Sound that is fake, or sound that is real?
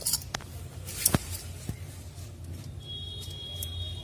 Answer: real